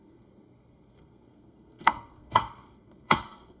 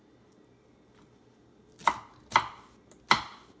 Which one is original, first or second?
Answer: second